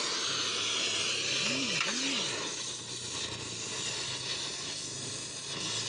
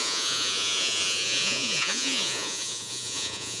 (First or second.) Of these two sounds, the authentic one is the first